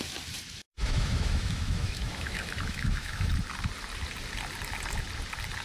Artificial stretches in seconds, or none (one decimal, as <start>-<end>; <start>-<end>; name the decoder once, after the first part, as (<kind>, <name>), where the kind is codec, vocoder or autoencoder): 0.7-3.3 (autoencoder, DAC-VAE)